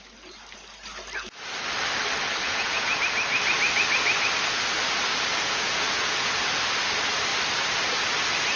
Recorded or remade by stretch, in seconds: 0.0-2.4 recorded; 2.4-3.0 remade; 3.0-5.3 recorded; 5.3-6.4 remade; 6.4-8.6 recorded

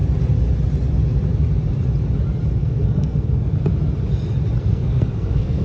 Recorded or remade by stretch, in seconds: 0.0-2.6 recorded; 2.6-3.5 remade; 3.5-4.6 recorded; 4.6-5.6 remade